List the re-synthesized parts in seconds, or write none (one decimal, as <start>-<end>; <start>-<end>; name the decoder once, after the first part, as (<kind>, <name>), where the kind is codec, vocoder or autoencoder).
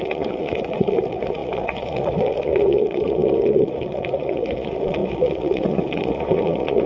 0.0-6.9 (vocoder, Vocos)